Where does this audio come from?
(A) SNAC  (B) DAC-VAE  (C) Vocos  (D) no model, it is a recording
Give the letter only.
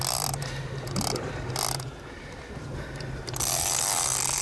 D